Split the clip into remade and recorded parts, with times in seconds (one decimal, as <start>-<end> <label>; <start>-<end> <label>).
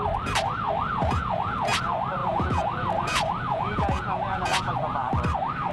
0.0-1.0 recorded; 1.0-1.7 remade; 1.7-2.2 recorded; 2.2-5.1 remade; 5.1-5.7 recorded